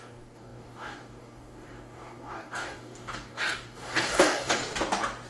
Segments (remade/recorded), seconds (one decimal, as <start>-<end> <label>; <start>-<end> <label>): 0.0-4.6 remade; 4.6-5.3 recorded